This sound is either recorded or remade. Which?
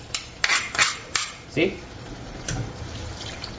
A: remade